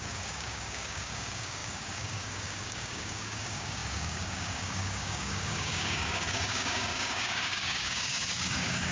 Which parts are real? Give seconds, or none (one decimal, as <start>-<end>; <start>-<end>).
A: none